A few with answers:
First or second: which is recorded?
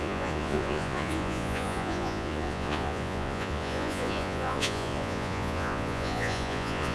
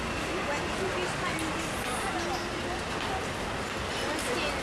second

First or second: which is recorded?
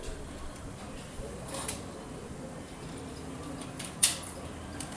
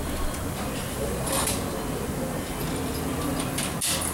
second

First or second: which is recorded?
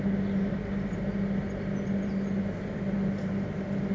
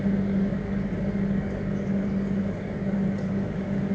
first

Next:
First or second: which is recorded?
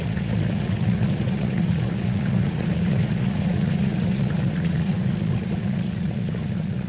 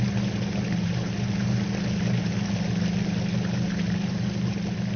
second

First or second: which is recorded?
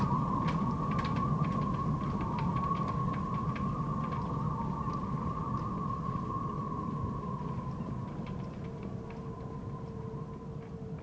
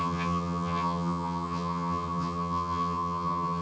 first